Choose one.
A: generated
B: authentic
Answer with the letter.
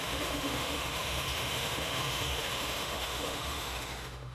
A